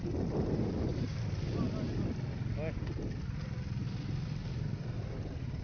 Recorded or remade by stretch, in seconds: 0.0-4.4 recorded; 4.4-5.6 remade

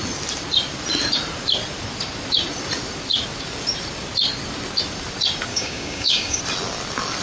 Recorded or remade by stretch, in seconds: 0.0-5.5 recorded; 5.5-6.4 remade; 6.4-7.2 recorded

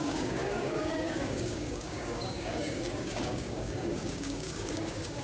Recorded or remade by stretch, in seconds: 0.0-5.2 remade

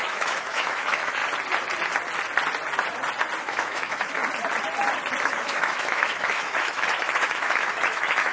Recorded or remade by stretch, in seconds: 0.0-1.2 remade; 1.2-3.4 recorded; 3.4-4.2 remade; 4.2-5.2 recorded; 5.2-8.3 remade

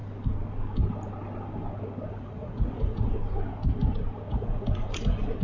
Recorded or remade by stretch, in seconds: 0.0-2.1 recorded; 2.1-3.2 remade; 3.2-4.3 recorded; 4.3-5.4 remade